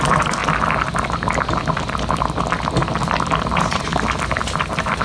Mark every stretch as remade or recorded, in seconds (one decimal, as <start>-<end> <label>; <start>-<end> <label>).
0.0-0.4 remade; 0.4-3.4 recorded; 3.4-3.9 remade; 3.9-5.0 recorded